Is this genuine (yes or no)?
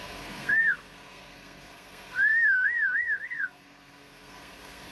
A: no